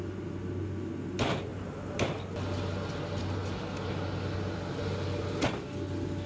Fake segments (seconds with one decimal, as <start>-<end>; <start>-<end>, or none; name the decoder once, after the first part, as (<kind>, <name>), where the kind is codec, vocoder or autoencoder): none